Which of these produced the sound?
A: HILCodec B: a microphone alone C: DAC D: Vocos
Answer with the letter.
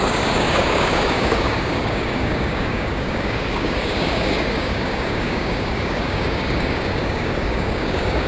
C